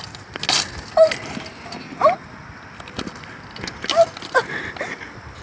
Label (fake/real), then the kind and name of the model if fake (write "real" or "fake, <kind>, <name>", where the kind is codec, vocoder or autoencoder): real